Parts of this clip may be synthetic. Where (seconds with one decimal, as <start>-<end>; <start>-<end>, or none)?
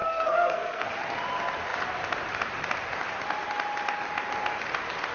0.0-0.9